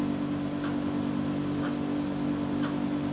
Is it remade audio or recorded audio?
recorded